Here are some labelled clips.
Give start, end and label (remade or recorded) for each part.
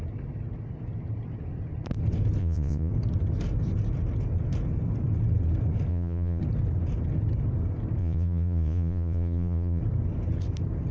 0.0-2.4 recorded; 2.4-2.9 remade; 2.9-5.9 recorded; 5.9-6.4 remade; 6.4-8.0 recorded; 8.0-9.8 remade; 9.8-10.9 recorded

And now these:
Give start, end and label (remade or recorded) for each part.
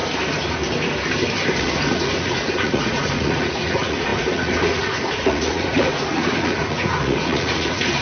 0.0-1.6 recorded; 1.6-8.0 remade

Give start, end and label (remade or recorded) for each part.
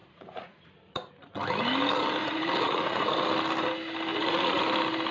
0.0-1.1 remade; 1.1-2.2 recorded; 2.2-3.1 remade; 3.1-4.1 recorded; 4.1-4.6 remade; 4.6-5.1 recorded